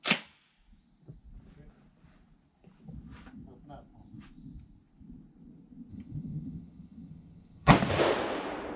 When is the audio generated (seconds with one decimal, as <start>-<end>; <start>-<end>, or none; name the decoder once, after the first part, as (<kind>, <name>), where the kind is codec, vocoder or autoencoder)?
5.9-7.7 (vocoder, HiFi-GAN)